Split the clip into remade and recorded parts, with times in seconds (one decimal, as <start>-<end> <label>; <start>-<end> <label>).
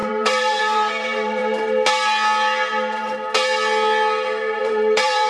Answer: 0.0-1.4 remade; 1.4-4.6 recorded; 4.6-5.3 remade